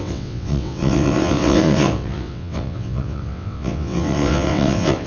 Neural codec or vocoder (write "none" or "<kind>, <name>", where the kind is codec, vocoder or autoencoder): vocoder, WaveNeXt